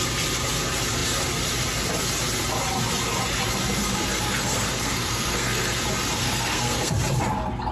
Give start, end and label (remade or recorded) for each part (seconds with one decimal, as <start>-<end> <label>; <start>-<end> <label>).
0.0-3.8 recorded; 3.8-5.8 remade; 5.8-6.2 recorded; 6.2-6.9 remade; 6.9-7.7 recorded

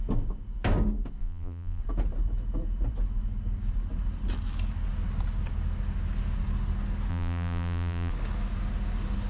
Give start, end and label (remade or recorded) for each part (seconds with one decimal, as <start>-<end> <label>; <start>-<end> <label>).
0.0-1.2 recorded; 1.2-1.8 remade; 1.8-7.1 recorded; 7.1-8.1 remade; 8.1-9.3 recorded